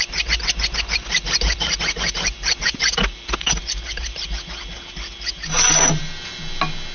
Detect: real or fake real